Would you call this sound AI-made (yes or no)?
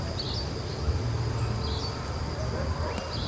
no